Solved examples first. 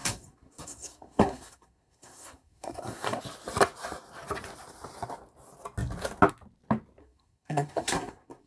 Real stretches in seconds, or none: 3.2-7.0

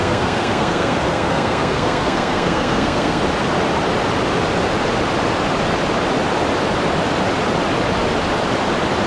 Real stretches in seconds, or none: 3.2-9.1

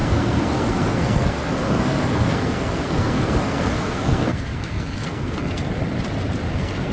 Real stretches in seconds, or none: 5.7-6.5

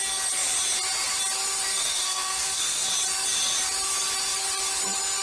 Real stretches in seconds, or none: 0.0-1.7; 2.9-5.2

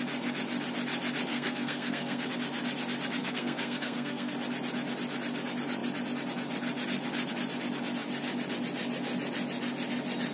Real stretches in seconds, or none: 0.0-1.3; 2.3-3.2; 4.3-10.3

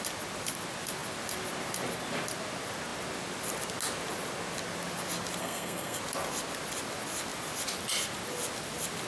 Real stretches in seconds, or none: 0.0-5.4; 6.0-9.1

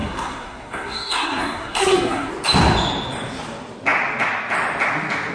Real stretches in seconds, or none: 2.3-5.3